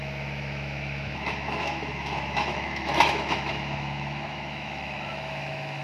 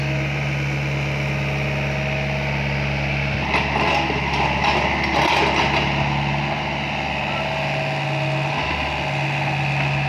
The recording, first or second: second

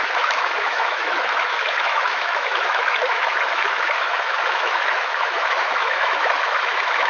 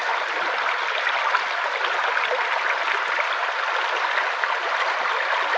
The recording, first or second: second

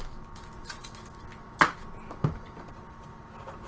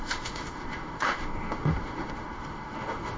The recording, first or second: first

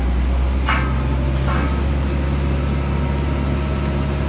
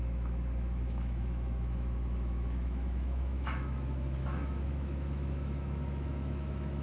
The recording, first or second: first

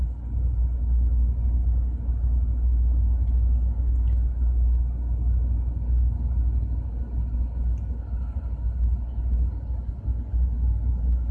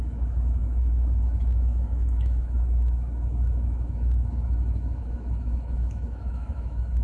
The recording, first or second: first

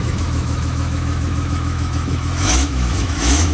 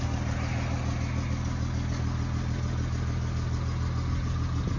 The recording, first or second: second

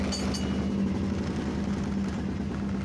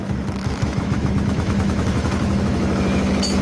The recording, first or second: first